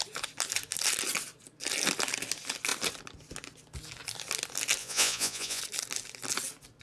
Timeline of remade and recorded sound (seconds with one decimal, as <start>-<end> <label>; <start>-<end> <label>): 0.0-4.8 recorded; 4.8-5.6 remade; 5.6-6.8 recorded